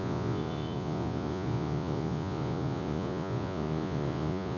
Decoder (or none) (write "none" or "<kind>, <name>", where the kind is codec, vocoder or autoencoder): vocoder, Vocos